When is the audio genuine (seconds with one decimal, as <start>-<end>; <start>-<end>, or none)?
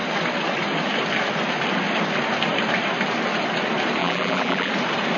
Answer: 0.0-4.0; 4.7-5.2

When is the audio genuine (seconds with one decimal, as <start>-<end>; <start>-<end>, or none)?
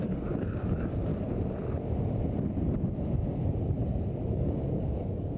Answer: 1.1-4.3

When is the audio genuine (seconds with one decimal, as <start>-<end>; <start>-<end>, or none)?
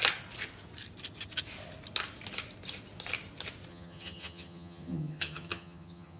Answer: 0.0-3.7